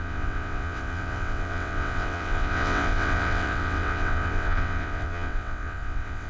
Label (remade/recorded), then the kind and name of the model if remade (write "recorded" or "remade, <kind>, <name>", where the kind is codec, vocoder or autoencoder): remade, vocoder, WaveNeXt